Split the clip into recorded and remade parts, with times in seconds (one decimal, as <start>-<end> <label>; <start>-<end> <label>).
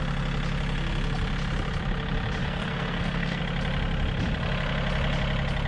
0.0-2.4 recorded; 2.4-3.4 remade; 3.4-5.7 recorded